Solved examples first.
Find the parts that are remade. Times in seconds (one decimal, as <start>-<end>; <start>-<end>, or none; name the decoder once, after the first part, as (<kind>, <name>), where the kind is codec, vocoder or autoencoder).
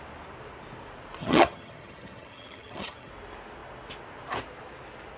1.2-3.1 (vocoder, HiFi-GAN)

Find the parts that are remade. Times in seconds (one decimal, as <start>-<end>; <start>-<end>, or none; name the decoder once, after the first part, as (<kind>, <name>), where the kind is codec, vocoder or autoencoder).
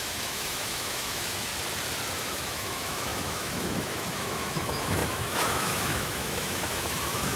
0.0-1.5 (autoencoder, DAC-VAE); 2.2-7.4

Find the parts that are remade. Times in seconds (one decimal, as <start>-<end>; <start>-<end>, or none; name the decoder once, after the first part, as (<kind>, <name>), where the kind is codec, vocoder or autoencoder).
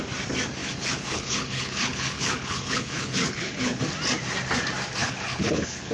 0.6-3.8 (codec, HILCodec); 5.0-5.9